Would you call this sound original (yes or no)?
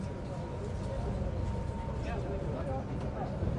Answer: yes